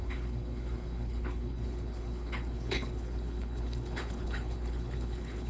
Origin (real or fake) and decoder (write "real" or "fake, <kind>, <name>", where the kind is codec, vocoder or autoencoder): fake, codec, HILCodec